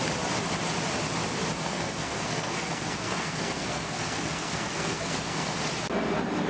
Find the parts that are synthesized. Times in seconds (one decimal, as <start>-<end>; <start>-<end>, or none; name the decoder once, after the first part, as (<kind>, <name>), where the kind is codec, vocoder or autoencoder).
1.6-5.5 (codec, SNAC)